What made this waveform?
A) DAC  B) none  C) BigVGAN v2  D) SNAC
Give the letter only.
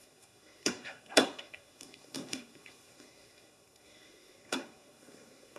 D